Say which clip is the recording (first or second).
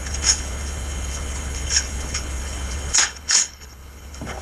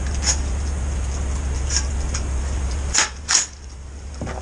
second